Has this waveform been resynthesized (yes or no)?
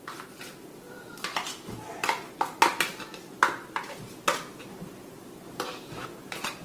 no